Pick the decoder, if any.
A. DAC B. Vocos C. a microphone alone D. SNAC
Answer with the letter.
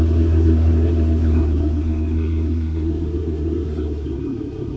D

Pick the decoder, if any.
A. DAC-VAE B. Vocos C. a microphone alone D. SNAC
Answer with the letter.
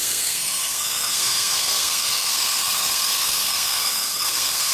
D